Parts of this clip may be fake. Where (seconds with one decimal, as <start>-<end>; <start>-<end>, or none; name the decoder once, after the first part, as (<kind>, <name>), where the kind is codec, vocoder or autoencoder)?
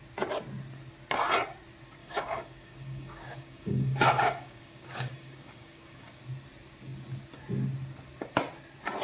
2.0-6.2 (codec, DAC)